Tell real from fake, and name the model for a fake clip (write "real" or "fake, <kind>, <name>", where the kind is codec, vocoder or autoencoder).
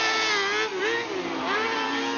real